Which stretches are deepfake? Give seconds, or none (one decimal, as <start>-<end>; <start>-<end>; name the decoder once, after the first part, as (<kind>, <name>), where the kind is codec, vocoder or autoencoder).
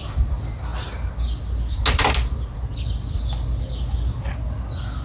none